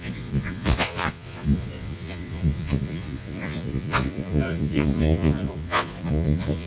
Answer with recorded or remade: remade